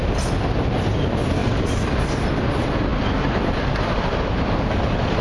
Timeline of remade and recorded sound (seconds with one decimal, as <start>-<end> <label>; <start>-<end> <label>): 0.0-1.4 recorded; 1.4-2.0 remade; 2.0-5.2 recorded